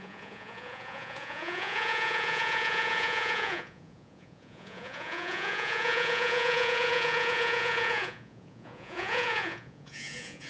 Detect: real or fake fake